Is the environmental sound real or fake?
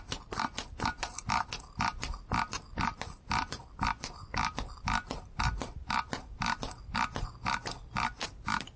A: real